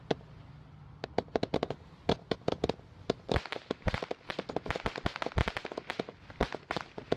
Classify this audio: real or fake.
real